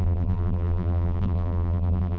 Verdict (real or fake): fake